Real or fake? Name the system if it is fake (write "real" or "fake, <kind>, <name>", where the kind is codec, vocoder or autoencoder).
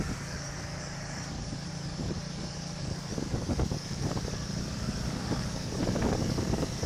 fake, codec, DAC